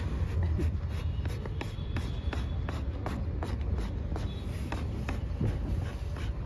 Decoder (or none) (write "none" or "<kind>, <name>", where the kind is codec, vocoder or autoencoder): vocoder, BigVGAN v2